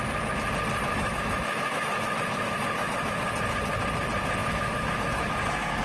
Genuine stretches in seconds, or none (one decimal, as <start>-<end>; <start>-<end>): 0.0-0.9; 3.3-4.4